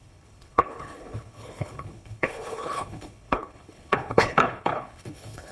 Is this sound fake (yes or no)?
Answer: yes